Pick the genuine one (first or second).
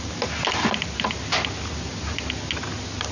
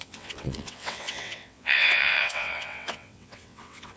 first